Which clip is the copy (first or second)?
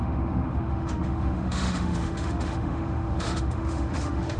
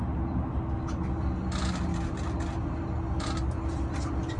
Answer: first